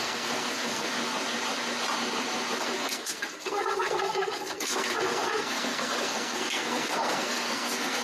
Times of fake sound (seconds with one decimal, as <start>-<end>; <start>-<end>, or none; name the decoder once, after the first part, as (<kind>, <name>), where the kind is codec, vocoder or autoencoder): 0.0-0.9 (codec, SNAC); 2.6-8.0